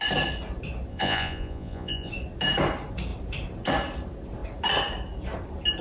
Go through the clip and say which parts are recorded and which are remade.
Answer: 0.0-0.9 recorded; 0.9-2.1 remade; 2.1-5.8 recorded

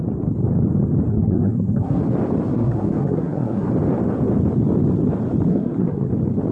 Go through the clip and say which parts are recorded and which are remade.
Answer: 0.0-1.1 recorded; 1.1-2.0 remade; 2.0-2.5 recorded; 2.5-3.7 remade; 3.7-5.5 recorded; 5.5-6.1 remade; 6.1-6.5 recorded

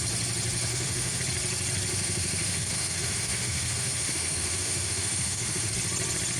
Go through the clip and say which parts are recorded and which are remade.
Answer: 0.0-0.7 recorded; 0.7-1.2 remade; 1.2-1.9 recorded; 1.9-5.7 remade; 5.7-6.4 recorded

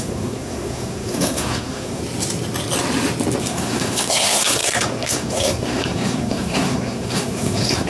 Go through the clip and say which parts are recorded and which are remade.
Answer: 0.0-2.0 remade; 2.0-3.4 recorded; 3.4-7.9 remade